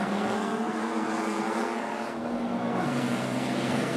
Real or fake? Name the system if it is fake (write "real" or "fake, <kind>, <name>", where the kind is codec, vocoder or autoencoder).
fake, codec, SNAC